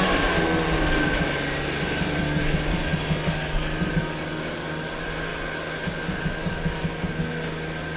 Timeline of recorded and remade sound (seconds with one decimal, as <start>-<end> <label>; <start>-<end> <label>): 0.0-8.0 recorded